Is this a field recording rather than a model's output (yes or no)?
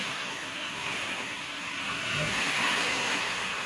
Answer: no